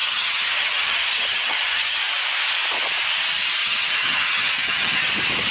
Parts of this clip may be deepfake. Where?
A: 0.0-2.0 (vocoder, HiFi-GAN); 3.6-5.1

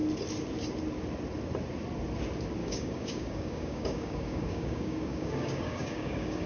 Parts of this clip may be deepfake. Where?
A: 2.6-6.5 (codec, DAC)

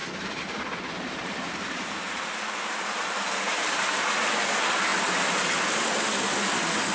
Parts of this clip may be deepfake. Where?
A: 0.0-4.0 (vocoder, BigVGAN v2)

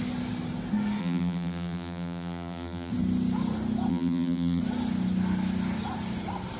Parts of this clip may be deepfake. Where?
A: 1.0-2.9 (vocoder, BigVGAN v2); 3.9-4.6

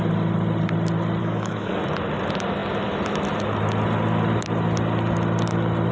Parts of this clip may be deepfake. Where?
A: 1.2-1.8 (codec, DAC)

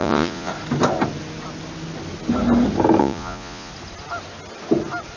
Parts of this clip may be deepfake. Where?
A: 0.0-0.5 (vocoder, Vocos); 3.0-3.7

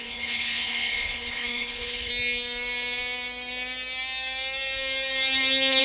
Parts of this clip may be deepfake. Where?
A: 0.0-2.1 (codec, HILCodec)

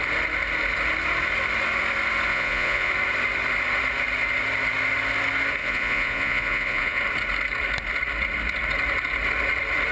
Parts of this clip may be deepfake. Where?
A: 2.3-2.9 (vocoder, Vocos); 5.6-7.0